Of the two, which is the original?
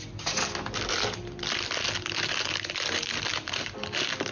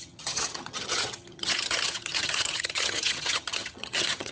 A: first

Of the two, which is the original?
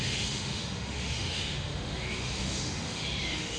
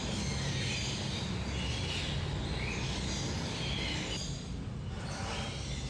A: second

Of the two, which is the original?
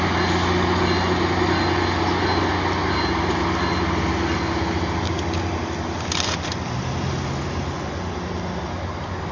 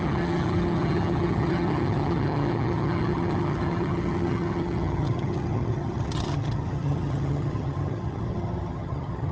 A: first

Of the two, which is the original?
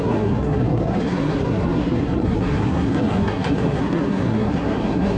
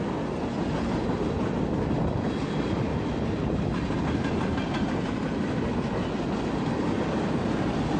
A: second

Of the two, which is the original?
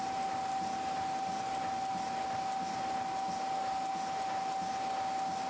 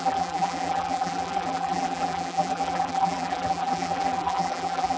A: first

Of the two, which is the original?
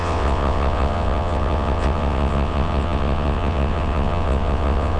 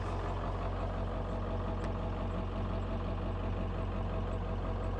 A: second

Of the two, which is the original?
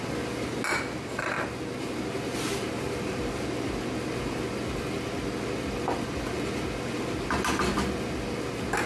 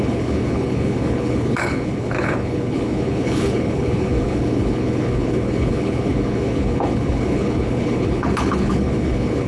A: first